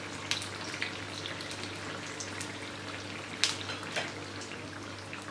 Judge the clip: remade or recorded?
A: recorded